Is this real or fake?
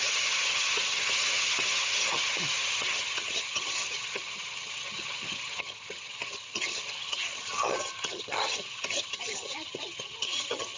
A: fake